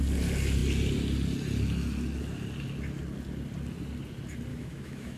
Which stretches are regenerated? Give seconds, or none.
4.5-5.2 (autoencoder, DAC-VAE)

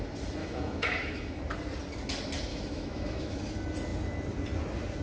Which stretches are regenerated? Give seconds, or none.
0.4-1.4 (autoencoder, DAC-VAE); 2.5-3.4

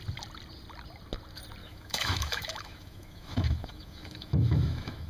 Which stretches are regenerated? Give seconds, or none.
1.6-5.1 (autoencoder, DAC-VAE)